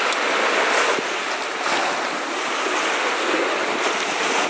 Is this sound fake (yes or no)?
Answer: no